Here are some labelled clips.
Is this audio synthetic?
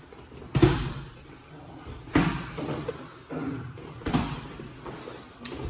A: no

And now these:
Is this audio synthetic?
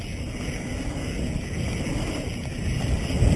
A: no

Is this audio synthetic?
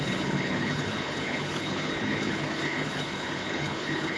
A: yes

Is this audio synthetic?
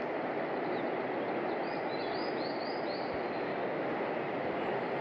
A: no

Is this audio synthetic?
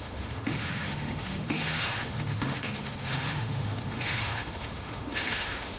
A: yes